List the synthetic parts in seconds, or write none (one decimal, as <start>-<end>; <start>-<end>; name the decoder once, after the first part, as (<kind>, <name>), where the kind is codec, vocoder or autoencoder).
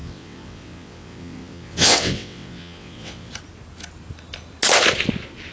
0.0-3.3 (vocoder, WaveNeXt)